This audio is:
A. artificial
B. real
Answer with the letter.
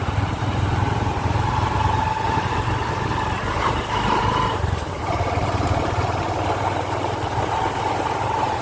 A